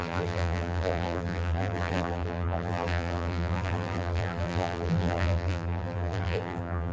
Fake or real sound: fake